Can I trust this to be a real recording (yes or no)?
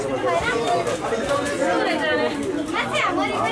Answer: yes